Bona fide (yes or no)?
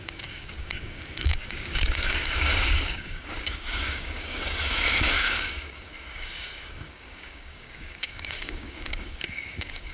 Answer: no